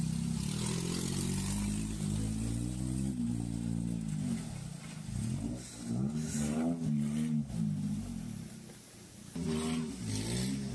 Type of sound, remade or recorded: recorded